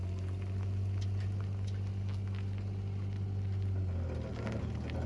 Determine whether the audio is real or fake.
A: real